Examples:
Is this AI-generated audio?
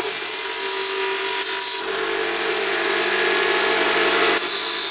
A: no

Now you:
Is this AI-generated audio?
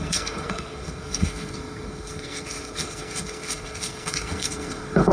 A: yes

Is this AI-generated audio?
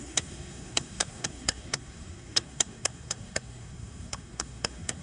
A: yes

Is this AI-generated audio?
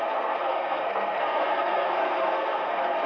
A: yes